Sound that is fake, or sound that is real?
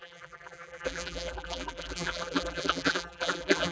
fake